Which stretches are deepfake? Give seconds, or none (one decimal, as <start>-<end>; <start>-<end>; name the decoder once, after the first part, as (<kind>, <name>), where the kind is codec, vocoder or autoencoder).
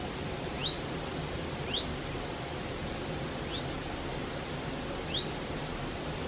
none